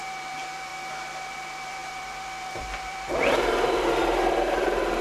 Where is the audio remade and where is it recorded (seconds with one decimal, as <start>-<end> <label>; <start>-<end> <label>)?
0.0-0.7 remade; 0.7-1.3 recorded; 1.3-5.0 remade